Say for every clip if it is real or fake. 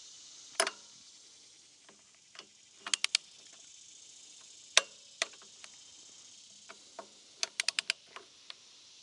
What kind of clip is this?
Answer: real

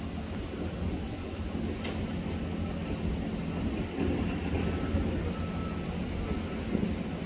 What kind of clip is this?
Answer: real